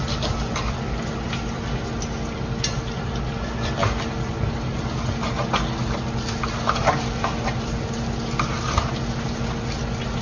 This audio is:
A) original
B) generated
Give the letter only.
A